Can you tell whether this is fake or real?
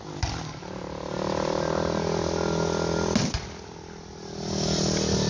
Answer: real